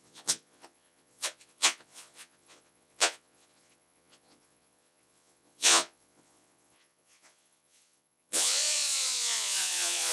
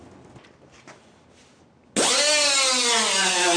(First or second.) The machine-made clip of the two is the first